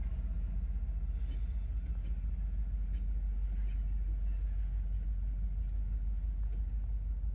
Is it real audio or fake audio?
real